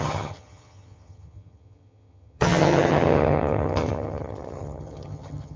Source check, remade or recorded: remade